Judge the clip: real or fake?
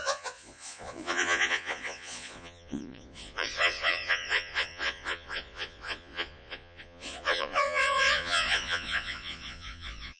fake